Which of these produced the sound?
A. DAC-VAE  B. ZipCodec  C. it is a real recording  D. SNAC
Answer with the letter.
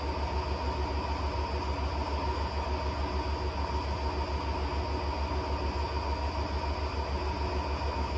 C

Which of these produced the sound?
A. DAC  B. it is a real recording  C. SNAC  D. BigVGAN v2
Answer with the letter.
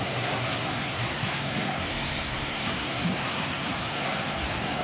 C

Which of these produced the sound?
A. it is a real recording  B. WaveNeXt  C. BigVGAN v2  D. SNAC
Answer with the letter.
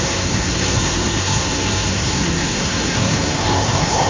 D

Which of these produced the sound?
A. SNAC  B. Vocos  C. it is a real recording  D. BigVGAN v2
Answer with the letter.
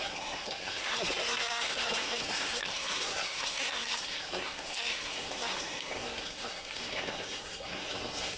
A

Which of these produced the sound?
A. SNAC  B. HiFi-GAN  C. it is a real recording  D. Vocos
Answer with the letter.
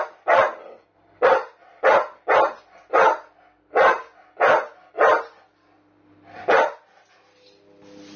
C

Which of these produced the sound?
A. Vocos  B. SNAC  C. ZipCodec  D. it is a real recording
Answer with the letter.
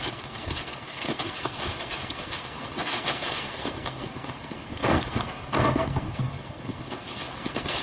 B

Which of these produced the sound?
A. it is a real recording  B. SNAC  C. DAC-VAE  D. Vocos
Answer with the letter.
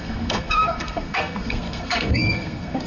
B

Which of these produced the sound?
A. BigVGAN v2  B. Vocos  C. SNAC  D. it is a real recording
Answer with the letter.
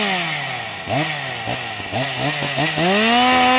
D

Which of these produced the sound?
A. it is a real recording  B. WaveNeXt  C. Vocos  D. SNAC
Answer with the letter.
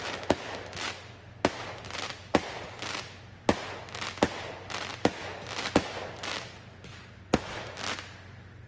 A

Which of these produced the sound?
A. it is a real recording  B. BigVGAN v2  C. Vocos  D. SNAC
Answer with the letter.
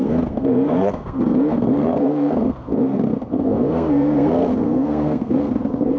D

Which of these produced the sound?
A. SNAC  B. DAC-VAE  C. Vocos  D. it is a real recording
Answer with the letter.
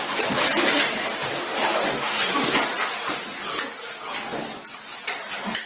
D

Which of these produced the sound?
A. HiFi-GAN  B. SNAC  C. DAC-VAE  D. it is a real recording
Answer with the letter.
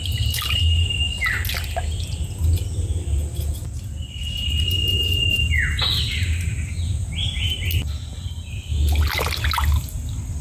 D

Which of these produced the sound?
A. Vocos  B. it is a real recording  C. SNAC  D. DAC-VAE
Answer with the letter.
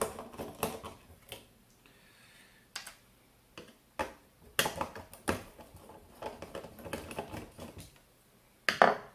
B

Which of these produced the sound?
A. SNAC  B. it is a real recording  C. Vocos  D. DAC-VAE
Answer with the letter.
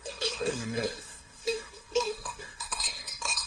A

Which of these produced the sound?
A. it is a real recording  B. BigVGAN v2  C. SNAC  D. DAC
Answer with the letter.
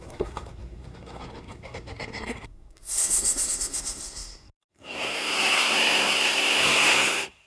C